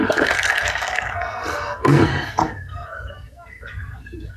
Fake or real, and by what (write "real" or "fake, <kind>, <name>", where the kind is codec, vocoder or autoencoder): fake, codec, SNAC